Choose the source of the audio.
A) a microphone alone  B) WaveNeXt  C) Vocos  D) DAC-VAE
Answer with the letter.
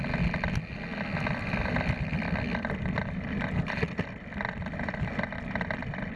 A